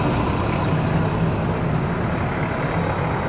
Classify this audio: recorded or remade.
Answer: recorded